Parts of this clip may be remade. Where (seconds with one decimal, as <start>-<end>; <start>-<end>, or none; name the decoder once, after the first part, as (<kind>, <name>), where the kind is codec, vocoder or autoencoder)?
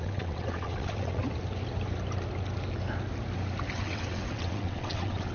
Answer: 0.0-1.2 (vocoder, WaveNeXt); 3.7-5.3